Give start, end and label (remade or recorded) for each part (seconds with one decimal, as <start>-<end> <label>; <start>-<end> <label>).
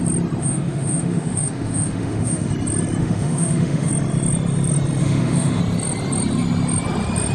0.0-0.4 recorded; 0.4-2.5 remade; 2.5-3.0 recorded; 3.0-3.9 remade; 3.9-5.0 recorded; 5.0-5.6 remade; 5.6-7.3 recorded